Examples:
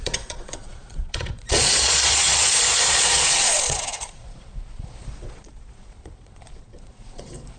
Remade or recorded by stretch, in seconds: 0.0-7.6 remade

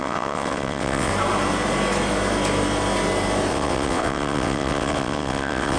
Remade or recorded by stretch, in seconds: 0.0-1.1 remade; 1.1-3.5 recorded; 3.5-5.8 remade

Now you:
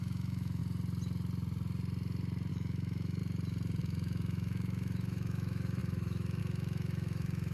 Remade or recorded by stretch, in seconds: 0.0-0.6 remade; 0.6-2.5 recorded; 2.5-3.2 remade; 3.2-3.8 recorded; 3.8-7.5 remade